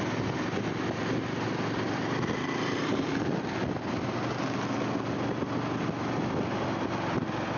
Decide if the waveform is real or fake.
real